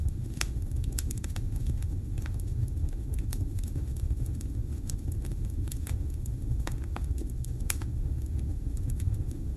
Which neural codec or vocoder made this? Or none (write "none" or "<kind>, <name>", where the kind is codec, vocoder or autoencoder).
autoencoder, DAC-VAE